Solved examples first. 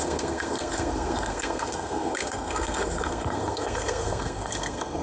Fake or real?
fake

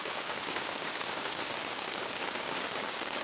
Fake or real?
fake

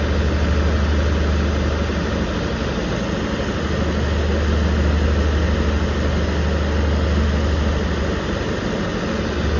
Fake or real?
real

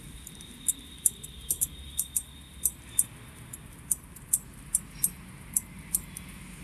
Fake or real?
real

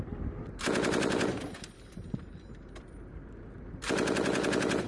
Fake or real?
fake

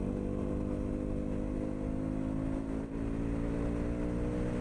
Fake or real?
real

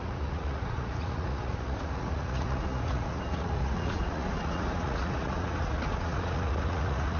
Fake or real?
fake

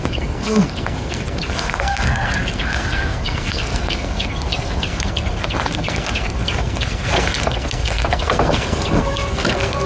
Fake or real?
fake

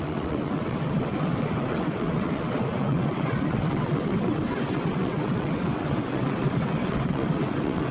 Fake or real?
fake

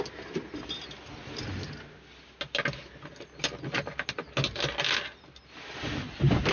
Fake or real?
real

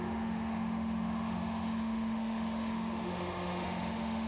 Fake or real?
fake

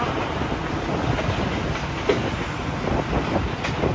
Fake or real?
real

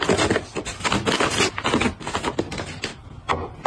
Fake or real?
real